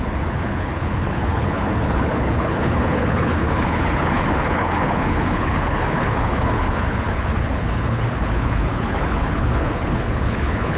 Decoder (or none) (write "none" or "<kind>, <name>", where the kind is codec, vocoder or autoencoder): codec, HILCodec